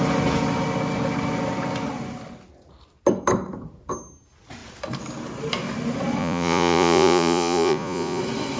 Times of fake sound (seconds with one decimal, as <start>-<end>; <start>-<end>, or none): 6.2-8.2